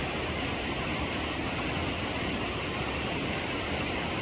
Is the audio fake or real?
real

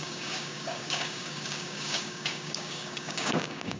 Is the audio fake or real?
fake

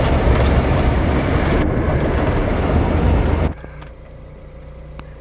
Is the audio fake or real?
real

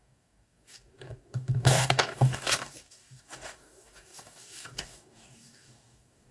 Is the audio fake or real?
fake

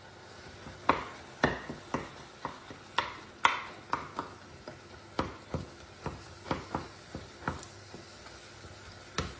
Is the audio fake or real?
real